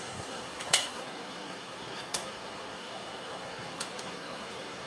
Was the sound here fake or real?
fake